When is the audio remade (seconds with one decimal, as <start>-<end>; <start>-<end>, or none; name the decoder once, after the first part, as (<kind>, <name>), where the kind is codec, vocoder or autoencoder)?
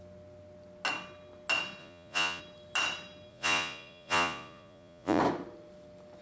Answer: 1.8-2.4 (vocoder, Vocos); 3.3-5.2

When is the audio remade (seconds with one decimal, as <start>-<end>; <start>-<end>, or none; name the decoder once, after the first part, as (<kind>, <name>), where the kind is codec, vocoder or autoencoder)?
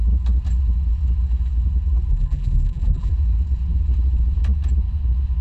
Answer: 2.1-3.1 (vocoder, BigVGAN v2)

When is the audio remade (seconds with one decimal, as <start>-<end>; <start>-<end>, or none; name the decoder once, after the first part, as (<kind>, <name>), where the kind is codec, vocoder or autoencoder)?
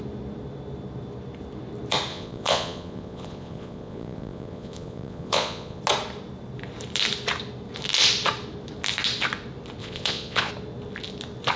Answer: 2.1-5.8 (vocoder, Vocos); 9.8-10.5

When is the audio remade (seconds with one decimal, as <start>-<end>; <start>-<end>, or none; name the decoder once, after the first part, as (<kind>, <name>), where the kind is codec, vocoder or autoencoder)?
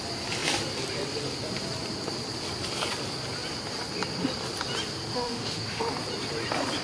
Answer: 5.1-5.8 (autoencoder, DAC-VAE)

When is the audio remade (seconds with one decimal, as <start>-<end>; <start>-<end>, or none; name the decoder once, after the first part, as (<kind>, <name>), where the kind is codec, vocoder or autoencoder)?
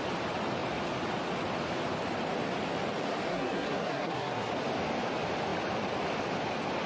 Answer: 3.3-4.5 (codec, SNAC)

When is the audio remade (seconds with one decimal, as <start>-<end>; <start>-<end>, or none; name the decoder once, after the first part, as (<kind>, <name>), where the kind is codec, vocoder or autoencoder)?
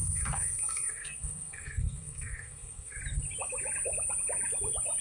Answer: 0.0-3.0 (codec, SNAC)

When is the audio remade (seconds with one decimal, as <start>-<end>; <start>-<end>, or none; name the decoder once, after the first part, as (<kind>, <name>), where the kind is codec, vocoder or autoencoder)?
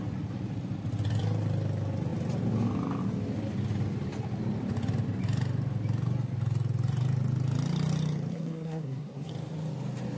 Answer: 8.3-9.3 (codec, SNAC)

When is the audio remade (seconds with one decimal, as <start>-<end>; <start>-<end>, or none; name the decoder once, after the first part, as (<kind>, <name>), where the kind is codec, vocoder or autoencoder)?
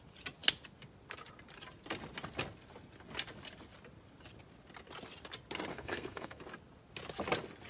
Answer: 5.7-6.4 (codec, SNAC)